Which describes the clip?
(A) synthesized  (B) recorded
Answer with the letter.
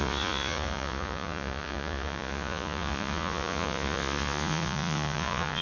A